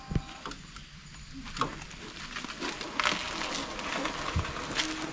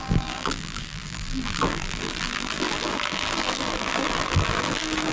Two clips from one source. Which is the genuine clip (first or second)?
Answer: first